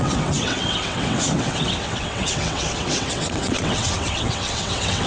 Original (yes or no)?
no